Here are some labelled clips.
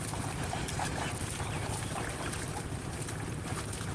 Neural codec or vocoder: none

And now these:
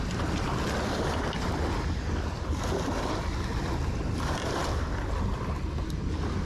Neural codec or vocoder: none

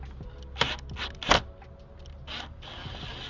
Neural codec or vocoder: none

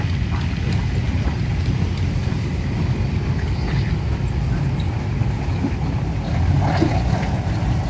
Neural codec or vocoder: none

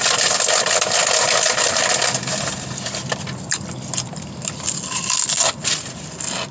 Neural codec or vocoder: none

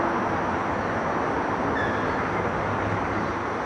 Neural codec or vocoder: none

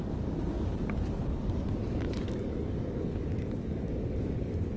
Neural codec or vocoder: codec, DAC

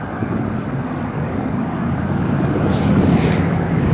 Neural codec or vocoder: codec, DAC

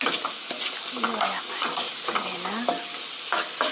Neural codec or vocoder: none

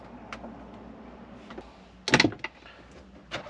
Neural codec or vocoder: none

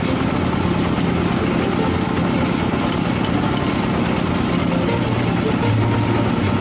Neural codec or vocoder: none